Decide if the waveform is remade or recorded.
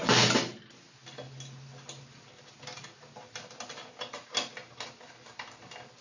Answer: recorded